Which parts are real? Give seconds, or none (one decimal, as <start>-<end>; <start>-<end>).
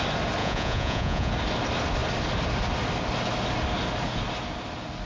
0.0-0.4; 1.3-5.1